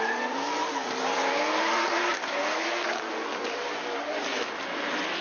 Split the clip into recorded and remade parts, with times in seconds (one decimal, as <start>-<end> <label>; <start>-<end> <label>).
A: 0.0-2.4 remade; 2.4-3.1 recorded; 3.1-5.2 remade